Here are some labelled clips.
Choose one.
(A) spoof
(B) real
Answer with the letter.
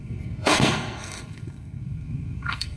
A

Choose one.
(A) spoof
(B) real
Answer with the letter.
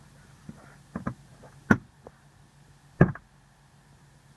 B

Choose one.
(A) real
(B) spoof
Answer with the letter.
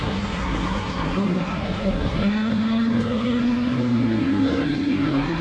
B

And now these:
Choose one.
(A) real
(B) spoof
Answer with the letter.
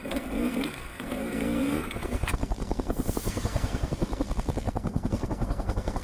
B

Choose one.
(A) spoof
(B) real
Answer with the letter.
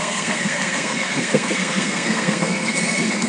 A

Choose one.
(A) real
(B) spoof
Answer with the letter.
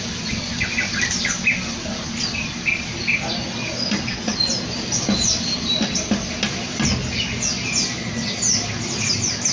A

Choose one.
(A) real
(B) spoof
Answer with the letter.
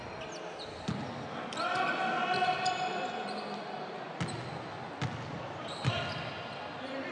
A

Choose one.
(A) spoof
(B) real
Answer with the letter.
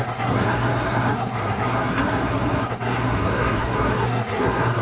A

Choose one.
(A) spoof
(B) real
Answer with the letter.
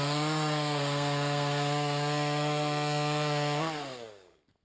A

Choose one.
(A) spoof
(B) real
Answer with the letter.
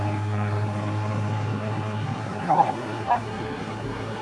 A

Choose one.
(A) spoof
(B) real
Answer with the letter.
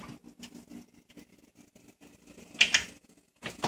B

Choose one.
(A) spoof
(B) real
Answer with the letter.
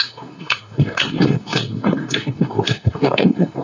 A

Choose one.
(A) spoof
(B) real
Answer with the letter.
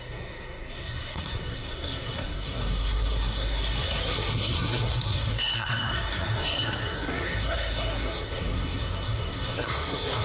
A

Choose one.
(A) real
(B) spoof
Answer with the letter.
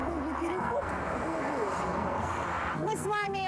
B